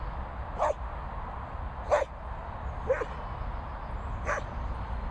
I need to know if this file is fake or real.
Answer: real